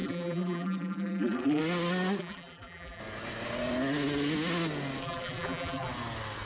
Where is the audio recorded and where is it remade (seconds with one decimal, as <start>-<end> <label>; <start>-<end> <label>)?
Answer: 0.0-1.6 remade; 1.6-2.2 recorded; 2.2-3.0 remade; 3.0-5.0 recorded; 5.0-5.9 remade; 5.9-6.5 recorded

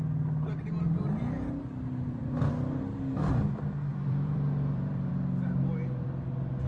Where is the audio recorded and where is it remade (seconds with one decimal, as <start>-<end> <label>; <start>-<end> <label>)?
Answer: 0.0-3.9 recorded; 3.9-5.1 remade; 5.1-6.7 recorded